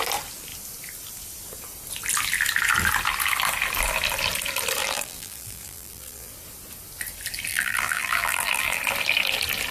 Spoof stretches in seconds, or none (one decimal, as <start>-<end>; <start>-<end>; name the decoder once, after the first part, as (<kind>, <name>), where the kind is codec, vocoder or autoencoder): 4.8-6.3 (vocoder, BigVGAN v2); 7.5-8.8